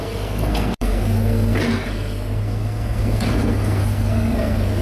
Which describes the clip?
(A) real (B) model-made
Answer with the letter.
B